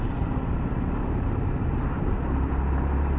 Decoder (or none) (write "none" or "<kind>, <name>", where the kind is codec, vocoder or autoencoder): none